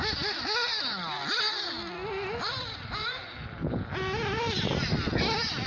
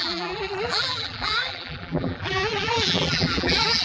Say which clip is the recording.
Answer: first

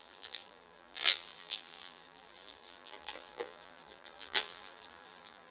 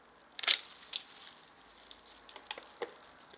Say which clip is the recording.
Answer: second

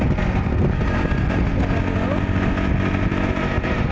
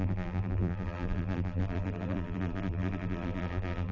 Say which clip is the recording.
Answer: first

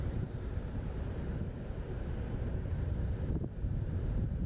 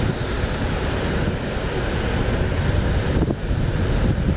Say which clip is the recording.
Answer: second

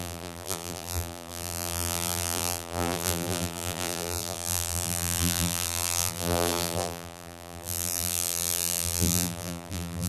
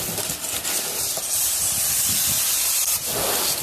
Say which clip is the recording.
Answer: second